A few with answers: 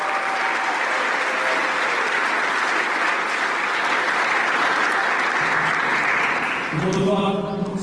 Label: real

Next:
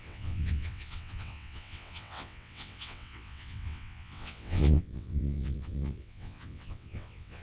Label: fake